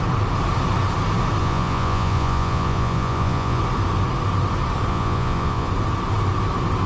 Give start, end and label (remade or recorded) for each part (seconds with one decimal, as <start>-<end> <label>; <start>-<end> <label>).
0.0-1.4 recorded; 1.4-3.6 remade; 3.6-4.9 recorded; 4.9-5.7 remade; 5.7-6.9 recorded